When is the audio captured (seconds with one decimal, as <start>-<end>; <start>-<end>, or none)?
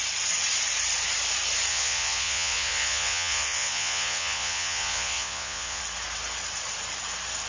0.0-1.7; 5.8-7.5